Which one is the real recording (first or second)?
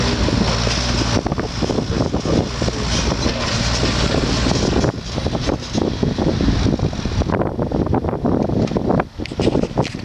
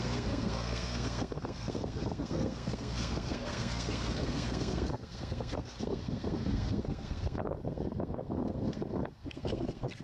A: first